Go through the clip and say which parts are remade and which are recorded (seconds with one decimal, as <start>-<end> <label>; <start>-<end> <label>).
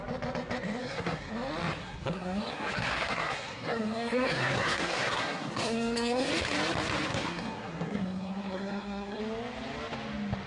0.0-0.8 recorded; 0.8-1.3 remade; 1.3-1.8 recorded; 1.8-6.3 remade; 6.3-7.1 recorded; 7.1-9.2 remade; 9.2-10.5 recorded